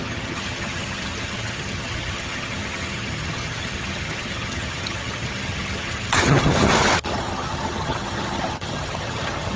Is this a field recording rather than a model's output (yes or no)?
no